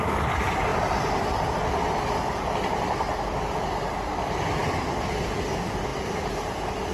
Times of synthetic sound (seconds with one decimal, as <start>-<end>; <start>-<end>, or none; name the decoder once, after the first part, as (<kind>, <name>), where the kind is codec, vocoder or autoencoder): none